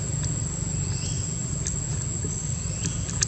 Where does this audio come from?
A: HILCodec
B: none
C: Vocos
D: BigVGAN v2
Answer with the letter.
B